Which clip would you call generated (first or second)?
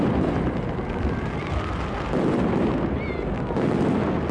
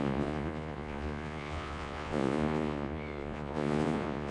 second